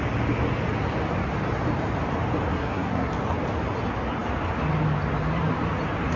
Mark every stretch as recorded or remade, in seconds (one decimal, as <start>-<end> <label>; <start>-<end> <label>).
0.0-2.5 recorded; 2.5-3.1 remade; 3.1-6.2 recorded